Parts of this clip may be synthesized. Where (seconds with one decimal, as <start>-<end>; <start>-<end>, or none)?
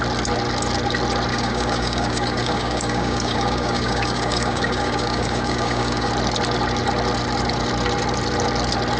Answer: 1.3-6.1